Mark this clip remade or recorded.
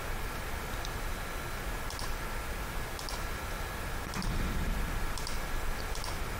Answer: recorded